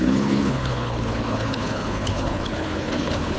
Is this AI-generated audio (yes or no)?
yes